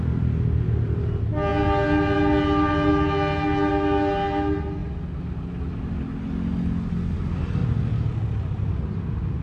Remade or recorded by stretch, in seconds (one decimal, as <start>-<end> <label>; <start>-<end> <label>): 0.0-9.4 recorded

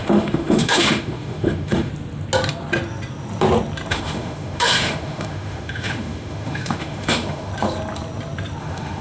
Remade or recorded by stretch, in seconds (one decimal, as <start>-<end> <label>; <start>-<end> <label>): 0.0-1.9 remade; 1.9-3.9 recorded; 3.9-7.5 remade; 7.5-8.6 recorded; 8.6-9.0 remade

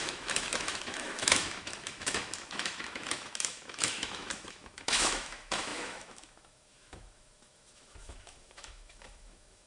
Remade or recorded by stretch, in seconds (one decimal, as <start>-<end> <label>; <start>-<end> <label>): 0.0-9.7 remade

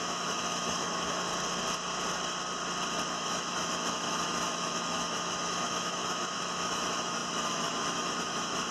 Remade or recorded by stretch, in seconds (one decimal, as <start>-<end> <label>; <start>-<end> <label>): 0.0-1.3 remade; 1.3-3.1 recorded; 3.1-8.7 remade

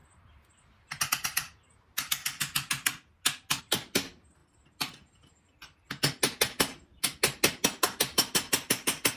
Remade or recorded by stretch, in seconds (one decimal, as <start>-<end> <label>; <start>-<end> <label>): 0.0-9.2 recorded

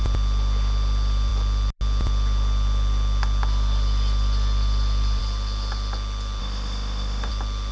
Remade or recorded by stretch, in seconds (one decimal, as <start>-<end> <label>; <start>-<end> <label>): 0.0-6.4 recorded; 6.4-7.3 remade; 7.3-7.7 recorded

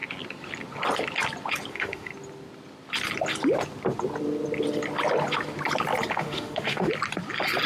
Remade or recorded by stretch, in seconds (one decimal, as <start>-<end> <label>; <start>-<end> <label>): 0.0-1.7 recorded; 1.7-2.1 remade; 2.1-6.1 recorded; 6.1-6.9 remade; 6.9-7.7 recorded